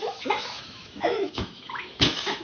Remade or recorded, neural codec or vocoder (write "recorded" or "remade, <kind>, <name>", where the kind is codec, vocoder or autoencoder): remade, autoencoder, DAC-VAE